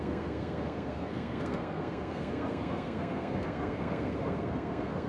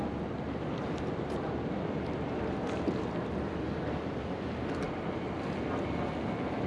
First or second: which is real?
second